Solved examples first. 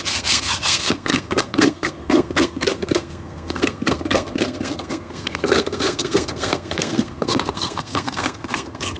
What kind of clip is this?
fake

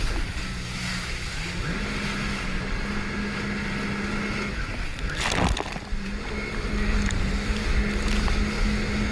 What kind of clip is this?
real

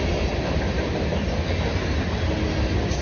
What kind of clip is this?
real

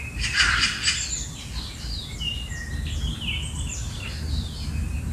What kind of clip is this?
fake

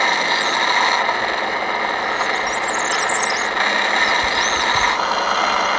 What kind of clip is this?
real